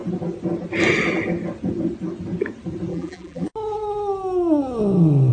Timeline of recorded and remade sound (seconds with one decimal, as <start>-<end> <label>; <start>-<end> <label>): 0.0-2.9 recorded; 2.9-3.5 remade; 3.5-5.3 recorded